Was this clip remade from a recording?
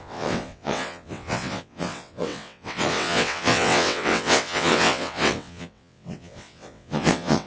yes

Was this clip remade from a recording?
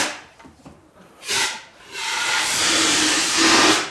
yes